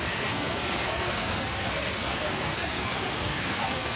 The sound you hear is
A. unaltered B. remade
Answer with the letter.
B